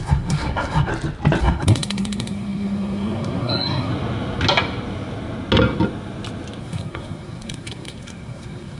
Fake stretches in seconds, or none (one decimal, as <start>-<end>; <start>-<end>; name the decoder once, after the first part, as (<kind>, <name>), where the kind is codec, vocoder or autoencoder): 0.0-0.9 (codec, SNAC); 1.4-3.9; 6.6-8.8